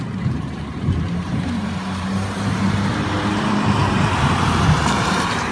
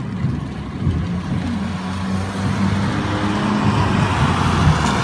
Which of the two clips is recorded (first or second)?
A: second